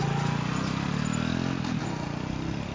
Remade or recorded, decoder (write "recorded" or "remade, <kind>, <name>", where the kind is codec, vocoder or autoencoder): recorded